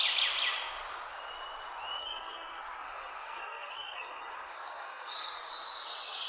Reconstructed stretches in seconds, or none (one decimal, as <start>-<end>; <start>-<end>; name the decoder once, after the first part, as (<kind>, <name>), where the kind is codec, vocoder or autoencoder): 2.0-5.5 (codec, SNAC)